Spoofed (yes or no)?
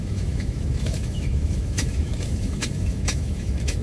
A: yes